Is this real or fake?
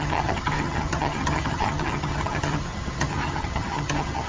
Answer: fake